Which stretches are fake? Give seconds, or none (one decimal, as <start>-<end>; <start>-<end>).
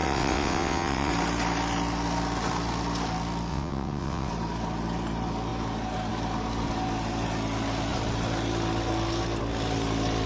0.0-1.1; 3.5-4.3